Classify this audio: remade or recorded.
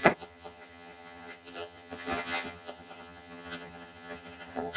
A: remade